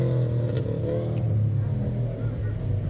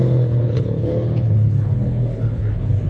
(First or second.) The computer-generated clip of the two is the second